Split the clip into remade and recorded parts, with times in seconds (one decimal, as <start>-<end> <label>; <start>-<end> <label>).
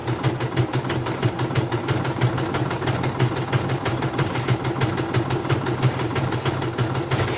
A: 0.0-4.4 remade; 4.4-5.4 recorded; 5.4-6.4 remade; 6.4-7.4 recorded